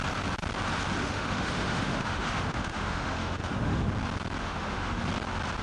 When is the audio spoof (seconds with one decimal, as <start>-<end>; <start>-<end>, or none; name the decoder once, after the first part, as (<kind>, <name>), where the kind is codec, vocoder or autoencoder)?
1.0-3.9 (autoencoder, DAC-VAE); 4.4-5.0